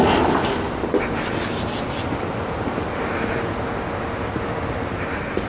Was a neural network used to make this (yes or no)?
no